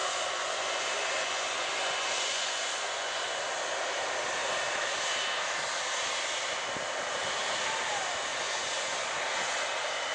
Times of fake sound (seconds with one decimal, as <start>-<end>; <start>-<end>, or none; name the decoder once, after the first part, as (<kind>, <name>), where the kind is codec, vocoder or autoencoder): 0.0-3.4 (vocoder, Vocos); 8.3-9.1

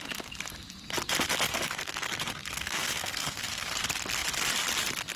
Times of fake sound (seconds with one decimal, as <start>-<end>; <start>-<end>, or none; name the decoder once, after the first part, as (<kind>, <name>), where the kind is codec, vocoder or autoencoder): 1.5-3.8 (codec, SNAC)

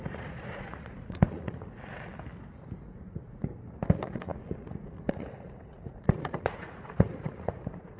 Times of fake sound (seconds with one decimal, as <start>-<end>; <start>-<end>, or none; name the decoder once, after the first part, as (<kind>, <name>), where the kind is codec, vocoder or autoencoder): 0.0-2.1 (vocoder, Vocos); 2.9-3.4; 3.9-8.0